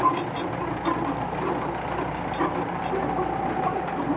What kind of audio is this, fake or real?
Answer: real